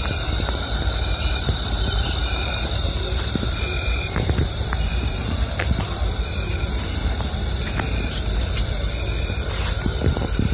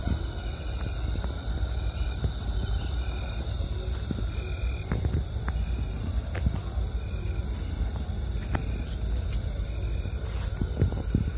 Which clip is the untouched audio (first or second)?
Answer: second